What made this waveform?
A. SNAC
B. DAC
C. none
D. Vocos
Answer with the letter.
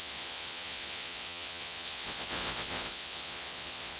D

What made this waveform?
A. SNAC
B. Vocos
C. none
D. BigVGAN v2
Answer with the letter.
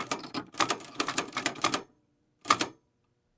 D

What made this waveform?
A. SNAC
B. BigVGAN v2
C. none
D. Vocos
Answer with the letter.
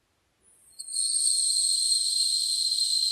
C